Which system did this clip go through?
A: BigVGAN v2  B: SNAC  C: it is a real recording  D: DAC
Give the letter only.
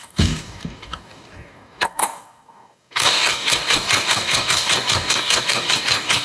D